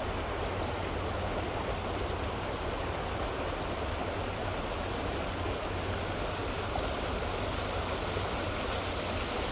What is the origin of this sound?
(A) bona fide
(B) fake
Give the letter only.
A